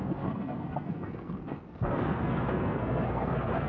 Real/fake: fake